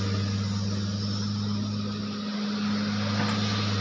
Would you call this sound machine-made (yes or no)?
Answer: no